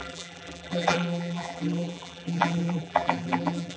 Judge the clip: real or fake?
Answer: fake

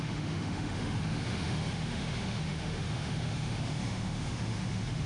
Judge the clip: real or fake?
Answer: fake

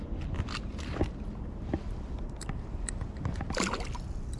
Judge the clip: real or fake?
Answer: real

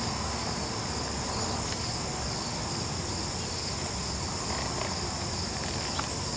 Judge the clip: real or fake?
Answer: real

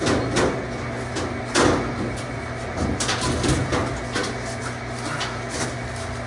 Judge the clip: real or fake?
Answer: real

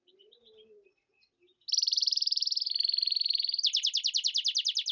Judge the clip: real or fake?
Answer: real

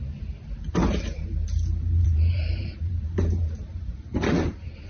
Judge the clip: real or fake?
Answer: fake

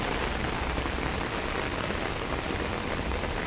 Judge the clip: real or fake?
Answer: real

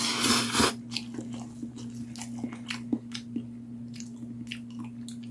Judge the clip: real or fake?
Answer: real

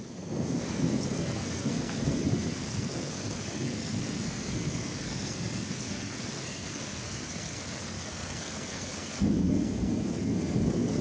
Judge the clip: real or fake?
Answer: fake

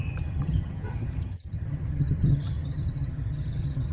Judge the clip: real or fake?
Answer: fake